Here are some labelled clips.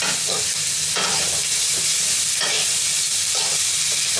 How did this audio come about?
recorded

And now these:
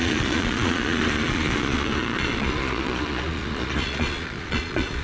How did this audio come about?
remade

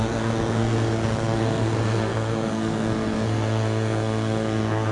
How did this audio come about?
remade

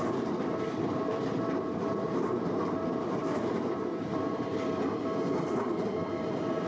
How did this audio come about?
remade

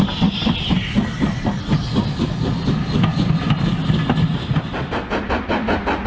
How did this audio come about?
recorded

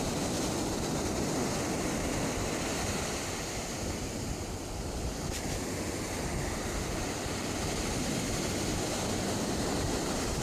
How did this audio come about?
recorded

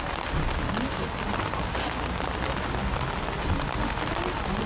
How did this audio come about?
recorded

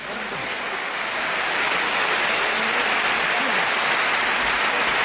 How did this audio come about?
recorded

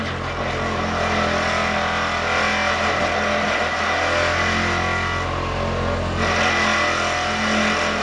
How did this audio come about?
recorded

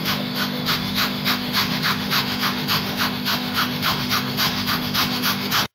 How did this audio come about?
remade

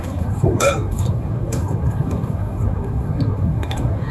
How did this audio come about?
remade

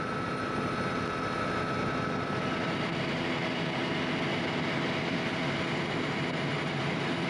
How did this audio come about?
recorded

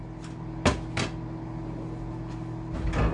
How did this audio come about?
recorded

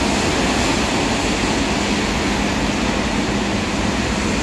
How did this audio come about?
recorded